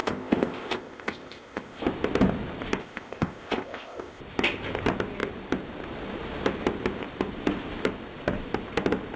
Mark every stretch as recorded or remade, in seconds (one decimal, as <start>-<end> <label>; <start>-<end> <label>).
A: 0.0-1.8 remade; 1.8-2.8 recorded; 2.8-4.2 remade; 4.2-9.2 recorded